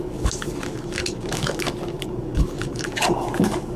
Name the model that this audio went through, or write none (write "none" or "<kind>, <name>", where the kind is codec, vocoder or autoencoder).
codec, DAC